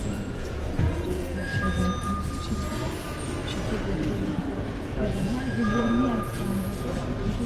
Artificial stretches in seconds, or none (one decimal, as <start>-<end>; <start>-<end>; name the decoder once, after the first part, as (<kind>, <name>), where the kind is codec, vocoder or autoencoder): 0.0-1.5 (vocoder, Vocos); 4.8-6.5